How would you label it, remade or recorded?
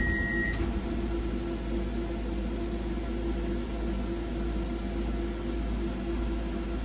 recorded